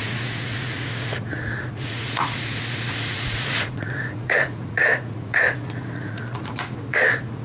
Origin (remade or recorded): remade